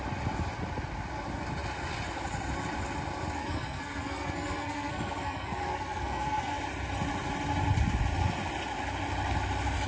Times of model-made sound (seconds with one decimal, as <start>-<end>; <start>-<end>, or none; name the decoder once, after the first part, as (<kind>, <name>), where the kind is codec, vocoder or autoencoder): 3.4-6.5 (codec, SNAC)